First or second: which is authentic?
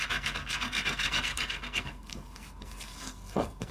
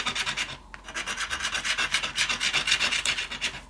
second